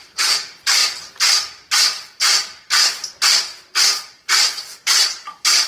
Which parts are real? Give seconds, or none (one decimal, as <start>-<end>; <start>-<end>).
0.8-4.0